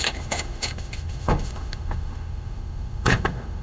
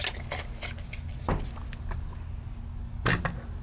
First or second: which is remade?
first